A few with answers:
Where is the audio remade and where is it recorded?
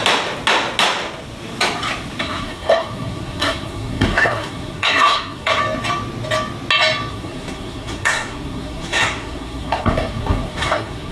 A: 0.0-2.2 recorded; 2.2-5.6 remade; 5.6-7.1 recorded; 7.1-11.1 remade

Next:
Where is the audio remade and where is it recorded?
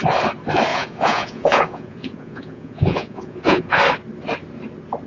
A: 0.0-0.7 recorded; 0.7-3.8 remade; 3.8-5.1 recorded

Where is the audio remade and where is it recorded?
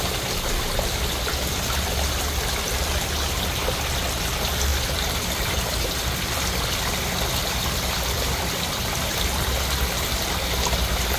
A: 0.0-4.7 recorded; 4.7-5.6 remade; 5.6-7.4 recorded; 7.4-8.9 remade; 8.9-11.2 recorded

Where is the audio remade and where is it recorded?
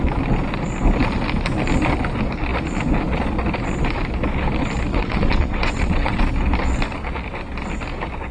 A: 0.0-4.9 recorded; 4.9-6.2 remade; 6.2-8.3 recorded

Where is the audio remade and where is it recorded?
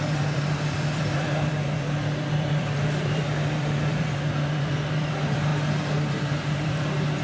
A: 0.0-5.5 remade; 5.5-6.1 recorded; 6.1-7.2 remade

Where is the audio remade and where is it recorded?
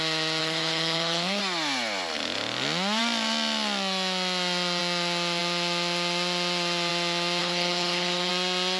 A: 0.0-0.4 recorded; 0.4-1.4 remade; 1.4-7.4 recorded; 7.4-8.3 remade; 8.3-8.8 recorded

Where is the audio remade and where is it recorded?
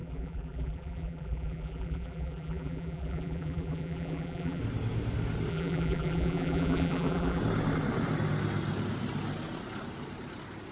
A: 0.0-4.6 remade; 4.6-5.5 recorded; 5.5-7.4 remade; 7.4-10.7 recorded